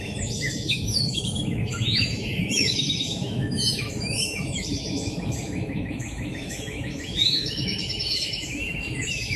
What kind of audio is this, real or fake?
fake